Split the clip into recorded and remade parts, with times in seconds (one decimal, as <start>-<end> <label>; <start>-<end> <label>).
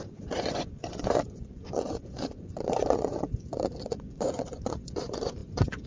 0.0-5.9 remade